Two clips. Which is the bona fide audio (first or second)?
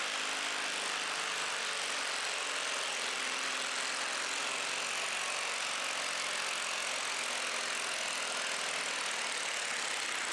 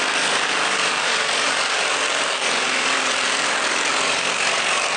first